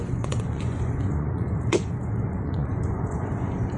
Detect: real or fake fake